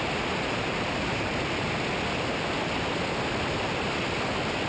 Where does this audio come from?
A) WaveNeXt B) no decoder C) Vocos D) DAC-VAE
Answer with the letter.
B